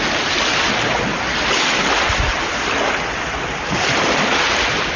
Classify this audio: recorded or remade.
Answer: recorded